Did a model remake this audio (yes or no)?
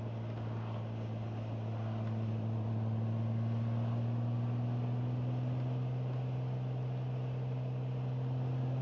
no